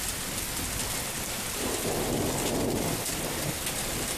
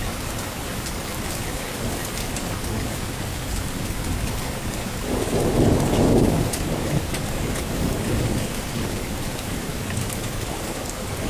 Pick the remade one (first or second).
second